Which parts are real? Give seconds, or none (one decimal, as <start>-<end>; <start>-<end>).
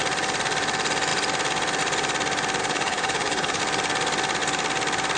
0.0-2.6; 3.6-5.2